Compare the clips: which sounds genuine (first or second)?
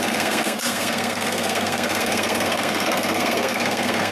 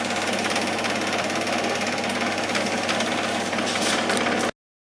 second